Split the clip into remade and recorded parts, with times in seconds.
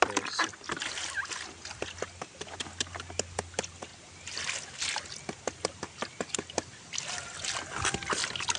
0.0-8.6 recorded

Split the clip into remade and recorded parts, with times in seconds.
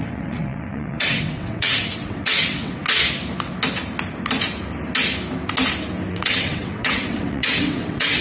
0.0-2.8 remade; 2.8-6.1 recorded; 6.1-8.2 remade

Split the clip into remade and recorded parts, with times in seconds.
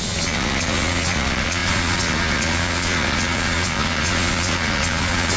0.0-5.4 remade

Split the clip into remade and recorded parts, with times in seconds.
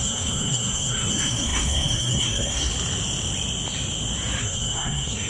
0.0-2.7 remade; 2.7-4.4 recorded; 4.4-5.3 remade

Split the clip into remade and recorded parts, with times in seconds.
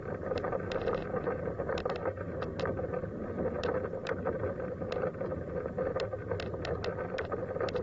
0.0-1.0 recorded; 1.0-2.6 remade; 2.6-4.0 recorded; 4.0-5.5 remade; 5.5-7.8 recorded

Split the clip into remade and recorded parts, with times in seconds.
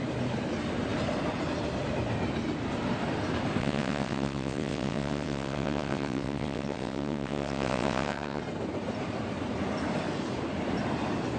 0.0-3.6 recorded; 3.6-8.4 remade; 8.4-11.4 recorded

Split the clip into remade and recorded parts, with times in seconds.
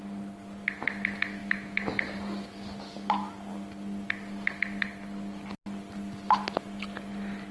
0.0-7.5 recorded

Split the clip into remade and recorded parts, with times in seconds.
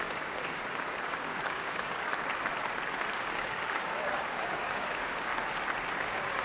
0.0-2.1 remade; 2.1-3.1 recorded; 3.1-5.3 remade; 5.3-6.0 recorded; 6.0-6.4 remade